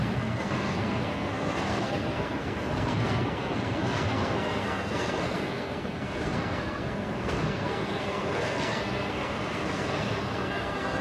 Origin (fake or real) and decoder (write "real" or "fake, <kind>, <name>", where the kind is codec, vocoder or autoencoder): fake, codec, SNAC